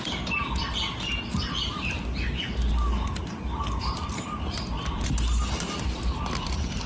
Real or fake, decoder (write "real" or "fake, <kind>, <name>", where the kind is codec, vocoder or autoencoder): real